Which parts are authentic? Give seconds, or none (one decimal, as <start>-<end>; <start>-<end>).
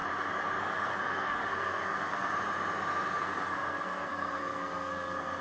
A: 0.0-0.6; 2.3-3.1